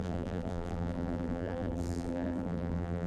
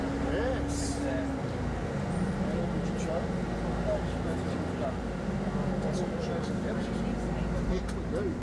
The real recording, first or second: second